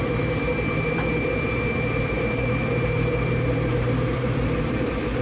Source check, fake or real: fake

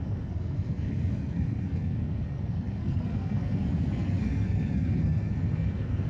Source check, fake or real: fake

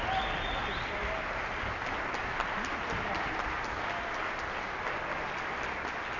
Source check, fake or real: real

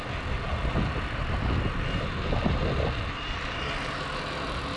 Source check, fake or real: real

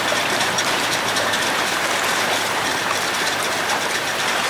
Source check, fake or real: fake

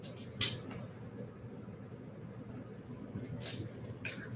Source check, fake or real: real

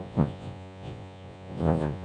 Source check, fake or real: fake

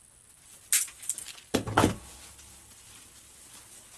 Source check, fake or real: real